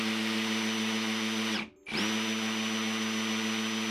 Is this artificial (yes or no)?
no